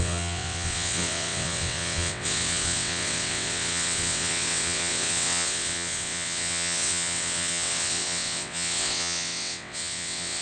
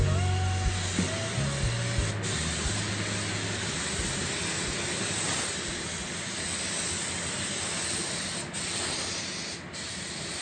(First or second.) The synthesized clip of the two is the first